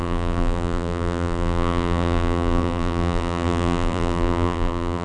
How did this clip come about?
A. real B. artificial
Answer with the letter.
B